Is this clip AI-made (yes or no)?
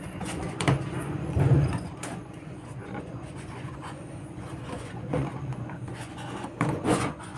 yes